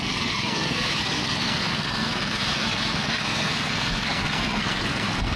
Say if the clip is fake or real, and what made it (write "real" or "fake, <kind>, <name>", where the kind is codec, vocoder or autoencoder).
fake, codec, SNAC